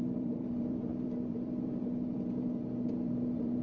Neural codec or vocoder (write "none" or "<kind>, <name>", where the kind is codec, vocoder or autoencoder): vocoder, BigVGAN v2